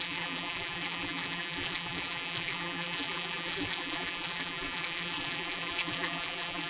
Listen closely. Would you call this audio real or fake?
fake